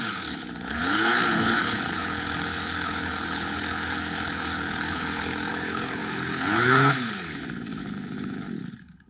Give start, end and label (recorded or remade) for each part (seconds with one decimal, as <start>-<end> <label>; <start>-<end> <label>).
0.0-9.1 remade